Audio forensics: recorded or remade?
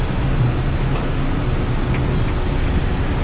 recorded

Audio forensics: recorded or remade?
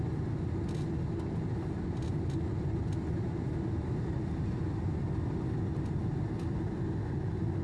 recorded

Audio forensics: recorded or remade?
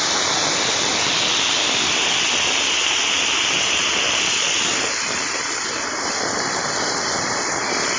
recorded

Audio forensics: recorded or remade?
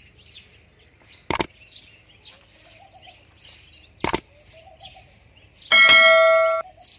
recorded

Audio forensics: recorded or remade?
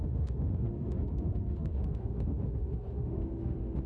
remade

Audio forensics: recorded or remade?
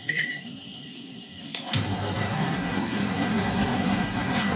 remade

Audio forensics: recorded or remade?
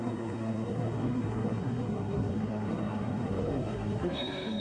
remade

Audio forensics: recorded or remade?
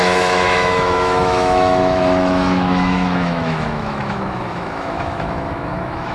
remade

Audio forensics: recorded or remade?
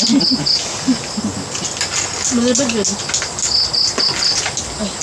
recorded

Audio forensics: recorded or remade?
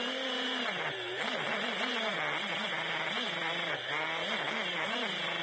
recorded